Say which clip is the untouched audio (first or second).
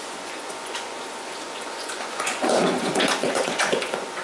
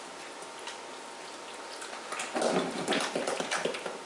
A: second